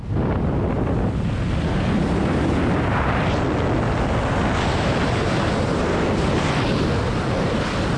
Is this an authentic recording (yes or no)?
yes